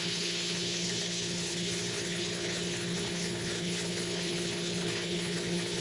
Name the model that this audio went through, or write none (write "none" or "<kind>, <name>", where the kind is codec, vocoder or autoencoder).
codec, HILCodec